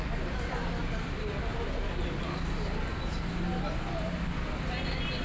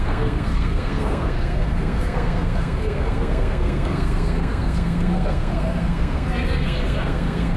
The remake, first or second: second